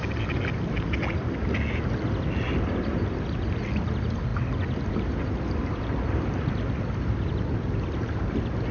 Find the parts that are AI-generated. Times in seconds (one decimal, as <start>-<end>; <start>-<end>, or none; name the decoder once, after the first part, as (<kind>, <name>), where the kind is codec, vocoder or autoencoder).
none